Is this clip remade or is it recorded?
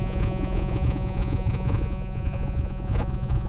remade